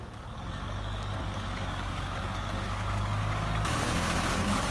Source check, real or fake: fake